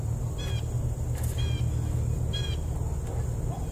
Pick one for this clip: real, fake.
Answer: real